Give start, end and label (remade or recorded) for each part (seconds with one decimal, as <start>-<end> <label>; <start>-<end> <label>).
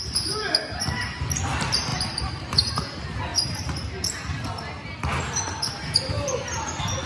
0.0-1.9 recorded; 1.9-2.7 remade; 2.7-7.1 recorded